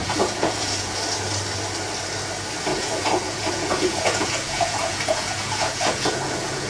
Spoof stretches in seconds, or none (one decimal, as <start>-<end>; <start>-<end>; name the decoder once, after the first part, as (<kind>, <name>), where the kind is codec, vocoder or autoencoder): 0.0-1.0 (vocoder, Vocos); 2.7-6.7